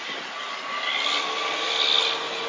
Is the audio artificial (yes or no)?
no